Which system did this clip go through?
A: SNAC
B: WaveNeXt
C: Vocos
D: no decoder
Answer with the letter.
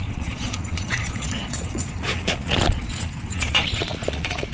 C